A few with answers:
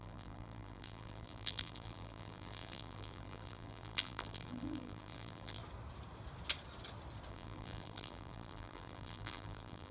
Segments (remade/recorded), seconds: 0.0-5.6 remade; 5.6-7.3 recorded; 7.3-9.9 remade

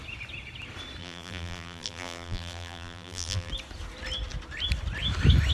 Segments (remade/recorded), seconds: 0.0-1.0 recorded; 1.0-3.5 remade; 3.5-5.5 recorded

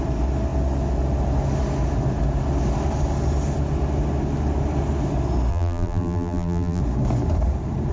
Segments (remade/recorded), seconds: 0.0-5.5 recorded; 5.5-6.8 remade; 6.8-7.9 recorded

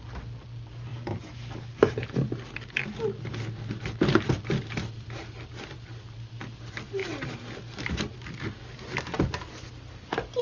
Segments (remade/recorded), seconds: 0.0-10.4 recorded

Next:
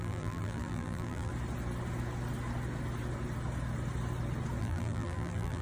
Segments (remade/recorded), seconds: 0.0-1.3 remade; 1.3-4.6 recorded; 4.6-5.6 remade

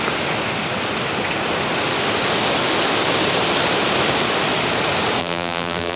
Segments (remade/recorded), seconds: 0.0-5.2 recorded; 5.2-6.0 remade

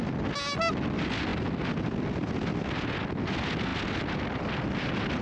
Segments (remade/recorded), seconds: 0.0-5.2 recorded

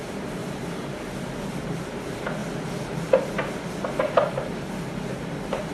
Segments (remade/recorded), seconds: 0.0-0.4 recorded; 0.4-0.9 remade; 0.9-5.7 recorded